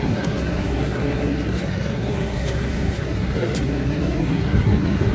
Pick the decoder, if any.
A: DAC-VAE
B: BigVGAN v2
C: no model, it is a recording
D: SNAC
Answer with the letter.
D